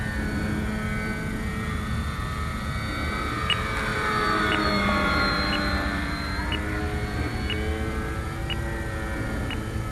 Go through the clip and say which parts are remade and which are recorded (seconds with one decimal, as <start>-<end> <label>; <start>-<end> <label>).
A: 0.0-3.9 recorded; 3.9-6.8 remade; 6.8-9.9 recorded

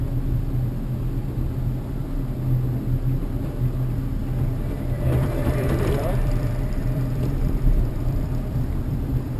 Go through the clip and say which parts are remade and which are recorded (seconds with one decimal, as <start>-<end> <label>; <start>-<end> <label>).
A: 0.0-4.2 recorded; 4.2-9.4 remade

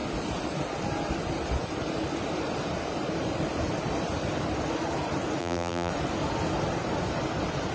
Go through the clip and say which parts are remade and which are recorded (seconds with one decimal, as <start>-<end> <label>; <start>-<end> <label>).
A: 0.0-5.4 recorded; 5.4-5.9 remade; 5.9-7.7 recorded

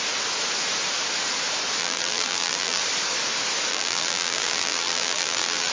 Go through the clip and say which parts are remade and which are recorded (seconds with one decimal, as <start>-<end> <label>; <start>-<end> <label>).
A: 0.0-1.8 recorded; 1.8-2.8 remade; 2.8-3.7 recorded; 3.7-5.7 remade

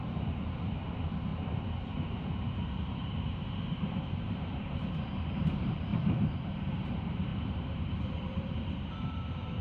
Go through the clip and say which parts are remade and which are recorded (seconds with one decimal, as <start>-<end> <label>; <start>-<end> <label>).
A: 0.0-5.9 remade; 5.9-6.7 recorded; 6.7-9.6 remade

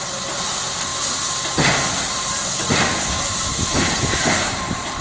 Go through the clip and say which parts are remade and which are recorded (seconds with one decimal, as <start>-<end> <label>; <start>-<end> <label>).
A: 0.0-0.9 remade; 0.9-3.2 recorded; 3.2-5.0 remade

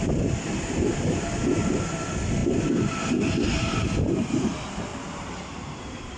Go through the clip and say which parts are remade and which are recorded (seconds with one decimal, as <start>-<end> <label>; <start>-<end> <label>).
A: 0.0-4.9 recorded; 4.9-5.8 remade; 5.8-6.2 recorded

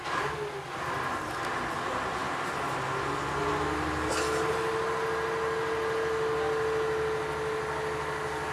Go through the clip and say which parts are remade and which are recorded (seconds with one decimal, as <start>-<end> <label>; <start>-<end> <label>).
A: 0.0-8.5 recorded